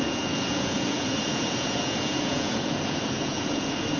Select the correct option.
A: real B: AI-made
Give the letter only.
B